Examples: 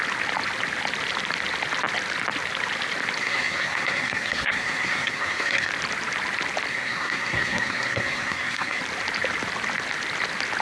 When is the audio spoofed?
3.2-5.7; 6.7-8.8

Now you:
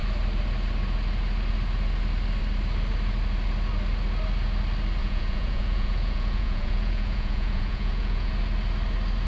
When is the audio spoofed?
5.0-8.3

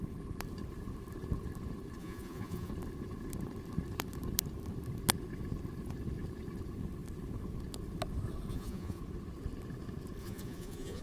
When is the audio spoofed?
2.0-2.7; 8.5-9.0; 10.2-11.0